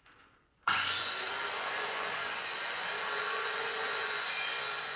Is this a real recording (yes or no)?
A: no